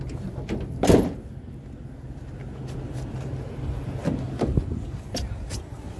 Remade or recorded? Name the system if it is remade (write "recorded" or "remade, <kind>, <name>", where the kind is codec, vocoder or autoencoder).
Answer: recorded